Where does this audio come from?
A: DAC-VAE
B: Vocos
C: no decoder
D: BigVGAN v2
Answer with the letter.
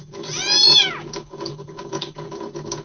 B